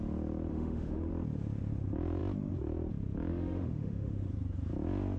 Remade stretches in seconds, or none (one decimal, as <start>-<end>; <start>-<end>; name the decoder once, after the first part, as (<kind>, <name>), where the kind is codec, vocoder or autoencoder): 0.5-1.1 (autoencoder, DAC-VAE); 3.3-4.3